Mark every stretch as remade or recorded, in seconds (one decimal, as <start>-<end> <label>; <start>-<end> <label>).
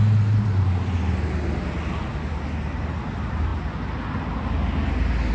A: 0.0-5.3 recorded